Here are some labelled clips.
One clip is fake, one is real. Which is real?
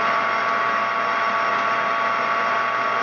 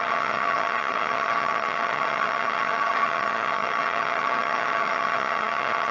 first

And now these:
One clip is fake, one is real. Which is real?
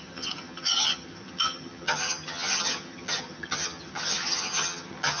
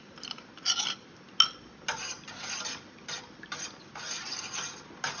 second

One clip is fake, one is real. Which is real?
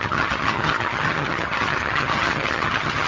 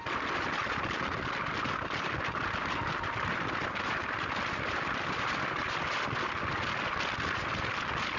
second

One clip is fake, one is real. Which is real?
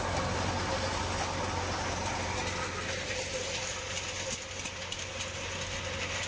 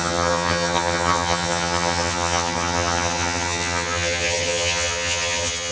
first